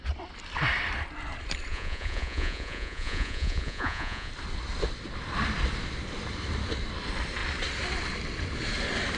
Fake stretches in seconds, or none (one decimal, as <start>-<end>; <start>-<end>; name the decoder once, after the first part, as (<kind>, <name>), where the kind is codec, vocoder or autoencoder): 1.7-4.3 (vocoder, Vocos)